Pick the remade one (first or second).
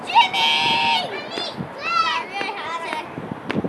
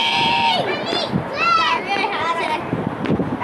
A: second